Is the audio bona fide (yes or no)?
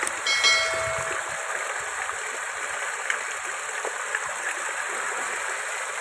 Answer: yes